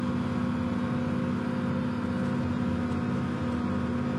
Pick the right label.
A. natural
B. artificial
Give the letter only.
A